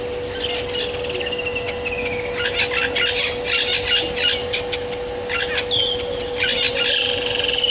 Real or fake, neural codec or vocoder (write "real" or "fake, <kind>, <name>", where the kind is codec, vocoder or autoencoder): real